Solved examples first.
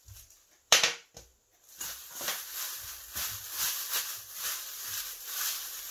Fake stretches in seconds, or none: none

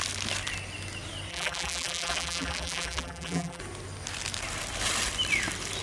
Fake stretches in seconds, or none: 1.3-3.6 (vocoder, BigVGAN v2)